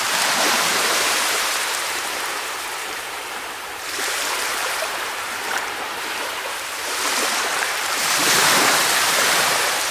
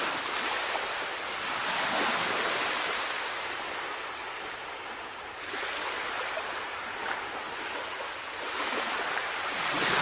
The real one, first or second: second